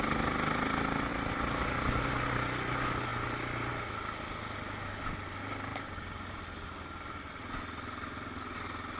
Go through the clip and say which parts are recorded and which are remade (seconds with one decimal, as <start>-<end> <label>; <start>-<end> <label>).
0.0-5.7 recorded; 5.7-6.4 remade; 6.4-9.0 recorded